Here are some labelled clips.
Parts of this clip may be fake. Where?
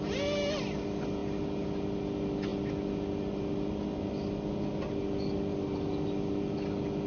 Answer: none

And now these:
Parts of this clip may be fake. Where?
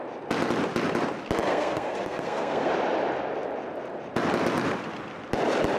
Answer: 1.5-2.7 (codec, SNAC)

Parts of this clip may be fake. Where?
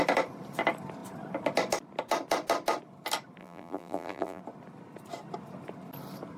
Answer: 3.4-4.4 (vocoder, BigVGAN v2)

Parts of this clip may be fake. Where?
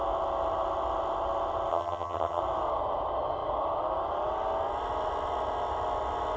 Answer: 1.7-2.4 (vocoder, HiFi-GAN)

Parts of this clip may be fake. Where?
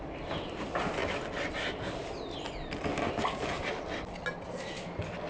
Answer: none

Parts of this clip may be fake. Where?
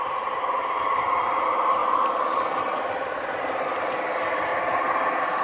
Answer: 0.0-1.8 (vocoder, BigVGAN v2); 2.4-5.4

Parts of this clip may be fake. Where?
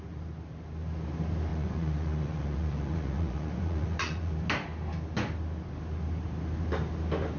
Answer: 1.5-4.3 (vocoder, Vocos)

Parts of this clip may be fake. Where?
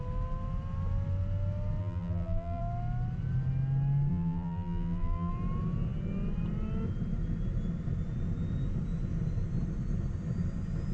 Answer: 1.8-2.6 (vocoder, BigVGAN v2); 4.1-5.3